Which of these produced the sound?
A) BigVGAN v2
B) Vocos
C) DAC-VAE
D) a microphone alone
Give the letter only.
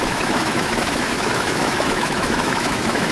C